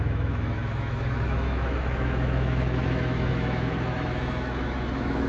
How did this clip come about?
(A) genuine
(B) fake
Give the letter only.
B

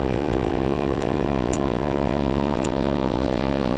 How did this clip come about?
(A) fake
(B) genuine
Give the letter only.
A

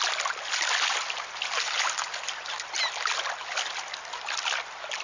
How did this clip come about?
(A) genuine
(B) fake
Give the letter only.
A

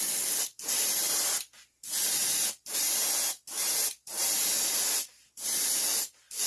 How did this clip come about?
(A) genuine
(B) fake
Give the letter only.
A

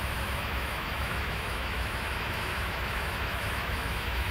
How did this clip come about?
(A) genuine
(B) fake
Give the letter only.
B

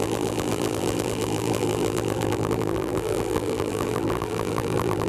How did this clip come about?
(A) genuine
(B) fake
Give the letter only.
B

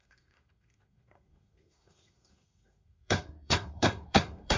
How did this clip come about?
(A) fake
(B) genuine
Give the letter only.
A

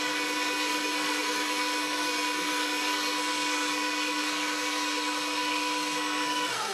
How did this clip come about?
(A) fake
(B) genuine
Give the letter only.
A